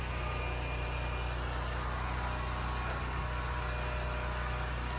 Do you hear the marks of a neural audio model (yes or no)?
no